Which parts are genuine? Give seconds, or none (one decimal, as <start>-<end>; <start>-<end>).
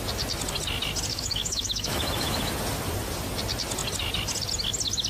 0.0-1.1; 2.5-5.1